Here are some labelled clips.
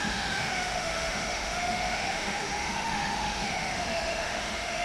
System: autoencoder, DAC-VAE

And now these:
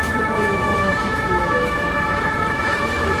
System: autoencoder, DAC-VAE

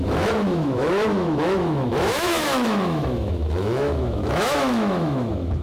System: autoencoder, DAC-VAE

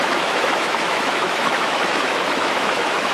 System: autoencoder, DAC-VAE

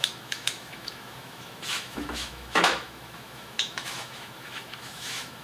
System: autoencoder, DAC-VAE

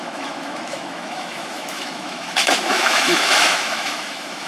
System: autoencoder, DAC-VAE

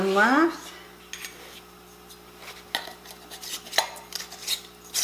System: none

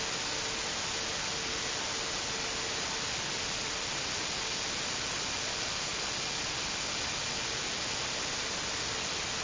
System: none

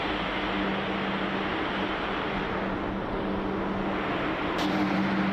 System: none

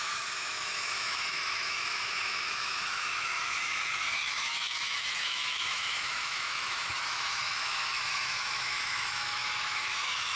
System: autoencoder, DAC-VAE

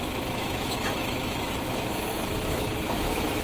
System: autoencoder, DAC-VAE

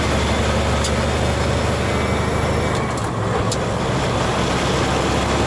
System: none